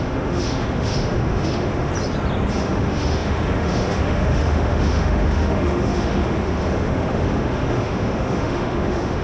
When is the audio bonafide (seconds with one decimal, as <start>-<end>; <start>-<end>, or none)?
1.9-2.5